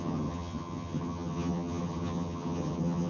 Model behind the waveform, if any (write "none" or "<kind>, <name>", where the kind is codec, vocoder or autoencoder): vocoder, HiFi-GAN